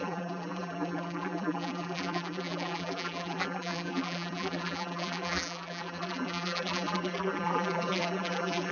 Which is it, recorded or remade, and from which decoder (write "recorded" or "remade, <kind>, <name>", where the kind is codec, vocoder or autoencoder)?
remade, vocoder, BigVGAN v2